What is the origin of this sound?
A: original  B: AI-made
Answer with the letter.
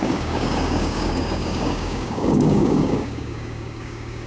B